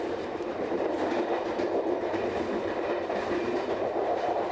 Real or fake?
fake